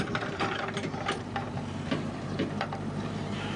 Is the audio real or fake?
fake